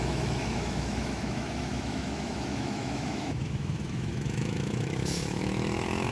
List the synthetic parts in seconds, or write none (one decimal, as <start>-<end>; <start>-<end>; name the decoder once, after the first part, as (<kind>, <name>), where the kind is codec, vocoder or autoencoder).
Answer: 0.0-6.1 (autoencoder, DAC-VAE)